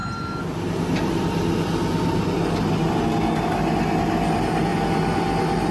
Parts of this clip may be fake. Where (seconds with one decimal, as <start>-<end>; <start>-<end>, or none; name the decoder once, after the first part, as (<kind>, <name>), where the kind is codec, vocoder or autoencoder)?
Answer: none